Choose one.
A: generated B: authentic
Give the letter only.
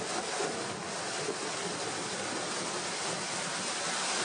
B